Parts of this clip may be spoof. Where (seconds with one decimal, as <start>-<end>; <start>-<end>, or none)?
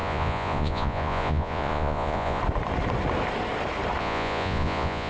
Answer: 0.0-2.4; 4.0-5.1